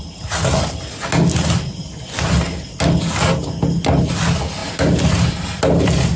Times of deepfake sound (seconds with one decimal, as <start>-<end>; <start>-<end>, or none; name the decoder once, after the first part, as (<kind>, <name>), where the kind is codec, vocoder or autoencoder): none

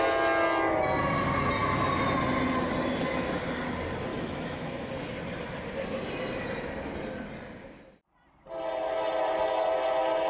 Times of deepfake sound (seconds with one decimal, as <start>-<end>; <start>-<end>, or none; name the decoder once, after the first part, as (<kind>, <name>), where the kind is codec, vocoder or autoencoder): 4.1-4.9 (autoencoder, DAC-VAE)

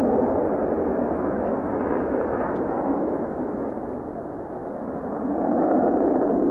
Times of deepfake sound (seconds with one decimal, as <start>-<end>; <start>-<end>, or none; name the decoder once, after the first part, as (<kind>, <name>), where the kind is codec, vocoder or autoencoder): 0.8-3.7 (autoencoder, DAC-VAE)